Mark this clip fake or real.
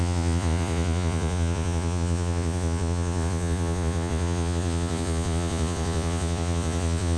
fake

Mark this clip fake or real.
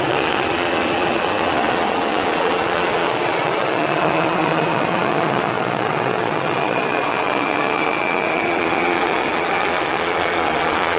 fake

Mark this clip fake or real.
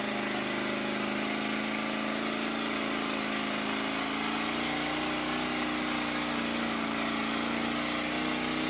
real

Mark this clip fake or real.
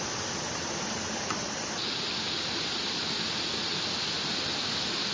real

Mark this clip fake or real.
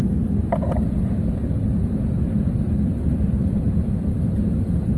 real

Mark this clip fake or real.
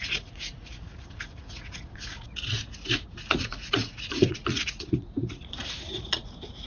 fake